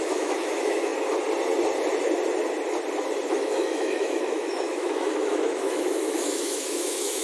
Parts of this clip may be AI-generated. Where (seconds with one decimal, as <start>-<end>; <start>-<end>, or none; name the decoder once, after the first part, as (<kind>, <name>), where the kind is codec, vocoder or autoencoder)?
0.0-0.9 (autoencoder, DAC-VAE); 3.3-7.2